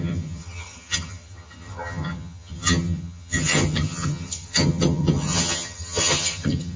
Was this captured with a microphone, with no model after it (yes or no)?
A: no